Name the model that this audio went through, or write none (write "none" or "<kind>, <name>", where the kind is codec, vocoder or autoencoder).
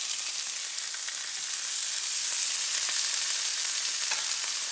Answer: none